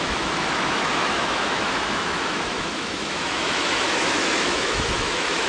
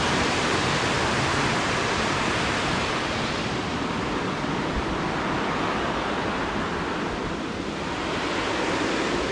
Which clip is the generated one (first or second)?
first